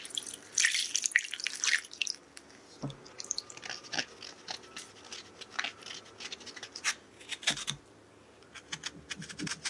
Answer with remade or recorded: recorded